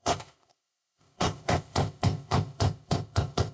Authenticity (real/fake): fake